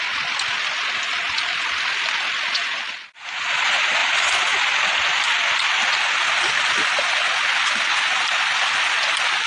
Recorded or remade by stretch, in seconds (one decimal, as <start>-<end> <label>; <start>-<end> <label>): 0.0-9.5 recorded